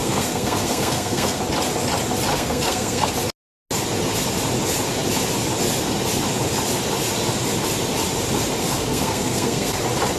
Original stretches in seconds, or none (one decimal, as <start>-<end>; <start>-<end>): 1.4-2.3; 3.1-8.6; 9.7-10.2

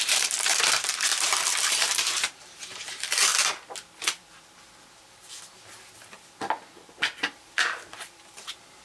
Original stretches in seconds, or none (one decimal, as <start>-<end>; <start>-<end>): 1.1-1.7; 3.3-7.4